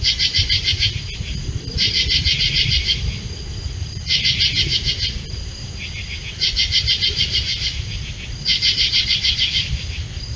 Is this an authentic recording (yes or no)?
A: yes